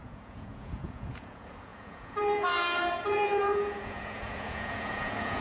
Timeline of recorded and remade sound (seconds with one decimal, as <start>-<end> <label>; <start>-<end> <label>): 0.0-5.4 remade